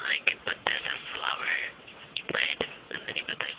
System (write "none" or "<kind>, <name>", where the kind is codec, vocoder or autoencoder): vocoder, WaveNeXt